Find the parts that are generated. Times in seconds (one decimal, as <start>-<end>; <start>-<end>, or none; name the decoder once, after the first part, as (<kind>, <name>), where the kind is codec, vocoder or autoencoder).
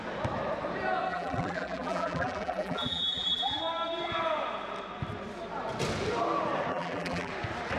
1.1-3.6 (vocoder, BigVGAN v2); 6.7-7.3